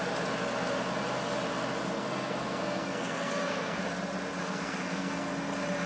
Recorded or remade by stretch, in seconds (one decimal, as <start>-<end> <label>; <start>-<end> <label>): 0.0-2.0 recorded; 2.0-3.8 remade; 3.8-4.4 recorded; 4.4-5.3 remade; 5.3-5.9 recorded